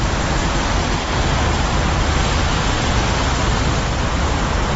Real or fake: fake